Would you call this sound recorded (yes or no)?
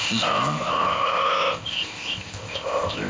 no